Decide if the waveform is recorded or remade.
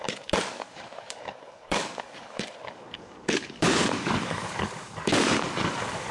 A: remade